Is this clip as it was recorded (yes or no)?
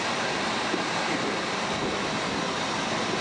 no